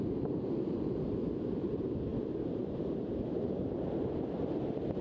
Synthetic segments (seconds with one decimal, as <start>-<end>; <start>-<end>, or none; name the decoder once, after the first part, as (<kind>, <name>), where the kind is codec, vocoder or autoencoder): none